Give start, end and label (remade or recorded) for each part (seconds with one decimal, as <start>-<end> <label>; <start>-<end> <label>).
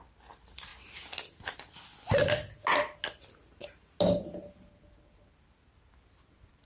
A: 0.0-6.7 recorded